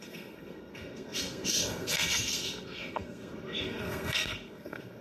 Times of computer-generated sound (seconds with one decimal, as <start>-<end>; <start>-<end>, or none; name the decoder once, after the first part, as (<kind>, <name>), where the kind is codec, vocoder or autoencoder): 0.0-5.0 (codec, SNAC)